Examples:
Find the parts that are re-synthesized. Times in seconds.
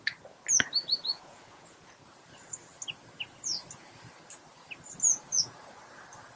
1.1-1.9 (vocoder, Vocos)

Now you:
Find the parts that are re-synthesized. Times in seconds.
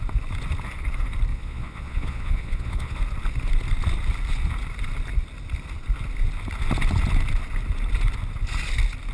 1.3-3.0 (vocoder, Vocos)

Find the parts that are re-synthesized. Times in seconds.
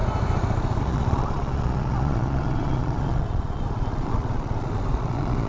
0.8-5.5 (vocoder, Vocos)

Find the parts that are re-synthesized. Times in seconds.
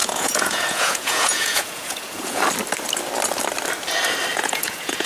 0.0-2.4 (vocoder, Vocos); 4.3-5.1